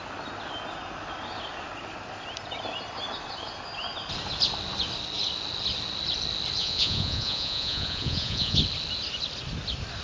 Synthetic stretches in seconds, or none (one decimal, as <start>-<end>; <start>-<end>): 6.6-8.6